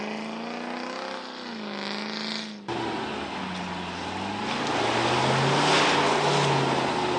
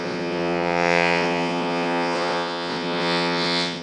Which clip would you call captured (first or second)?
first